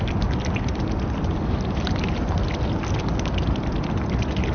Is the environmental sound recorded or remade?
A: recorded